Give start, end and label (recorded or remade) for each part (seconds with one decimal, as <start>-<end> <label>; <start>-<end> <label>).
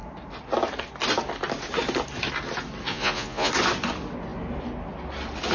0.0-2.9 recorded; 2.9-3.5 remade; 3.5-5.5 recorded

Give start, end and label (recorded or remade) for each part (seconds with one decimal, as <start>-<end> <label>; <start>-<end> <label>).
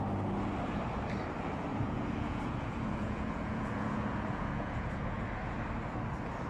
0.0-1.7 recorded; 1.7-5.2 remade; 5.2-6.5 recorded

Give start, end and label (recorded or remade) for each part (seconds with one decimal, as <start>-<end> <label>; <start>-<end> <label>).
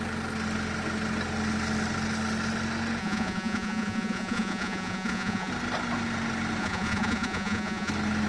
0.0-3.0 recorded; 3.0-5.5 remade; 5.5-6.6 recorded; 6.6-7.9 remade; 7.9-8.3 recorded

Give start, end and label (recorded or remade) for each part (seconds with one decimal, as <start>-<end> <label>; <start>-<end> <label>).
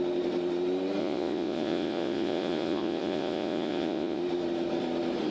0.0-1.0 recorded; 1.0-4.2 remade; 4.2-5.3 recorded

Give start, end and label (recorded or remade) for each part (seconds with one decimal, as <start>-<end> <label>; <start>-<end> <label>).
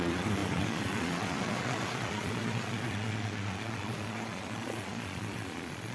0.0-5.9 remade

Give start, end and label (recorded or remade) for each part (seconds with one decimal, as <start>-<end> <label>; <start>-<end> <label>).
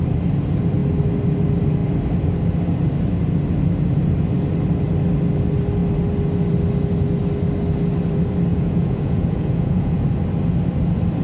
0.0-8.5 recorded; 8.5-10.0 remade; 10.0-11.2 recorded